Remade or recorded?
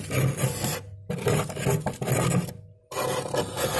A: recorded